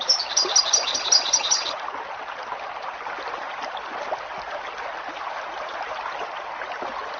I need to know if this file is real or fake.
real